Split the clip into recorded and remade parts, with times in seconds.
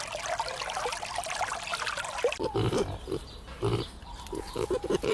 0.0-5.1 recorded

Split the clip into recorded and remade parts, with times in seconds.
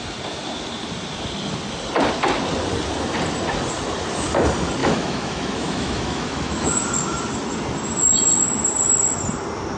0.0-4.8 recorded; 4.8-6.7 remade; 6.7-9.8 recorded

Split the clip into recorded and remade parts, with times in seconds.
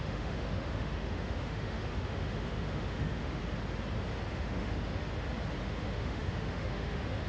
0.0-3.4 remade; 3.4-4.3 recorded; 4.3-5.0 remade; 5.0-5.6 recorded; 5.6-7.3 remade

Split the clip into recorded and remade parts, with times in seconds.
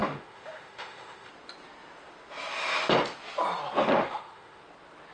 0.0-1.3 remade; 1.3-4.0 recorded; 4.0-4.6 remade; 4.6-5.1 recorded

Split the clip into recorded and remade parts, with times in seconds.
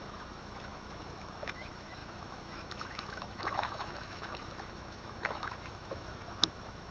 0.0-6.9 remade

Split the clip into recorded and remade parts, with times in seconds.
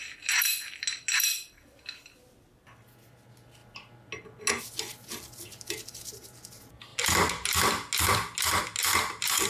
0.0-9.5 recorded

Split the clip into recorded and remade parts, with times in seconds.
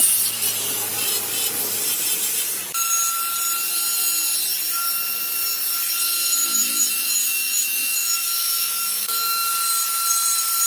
0.0-6.4 recorded; 6.4-9.5 remade; 9.5-10.7 recorded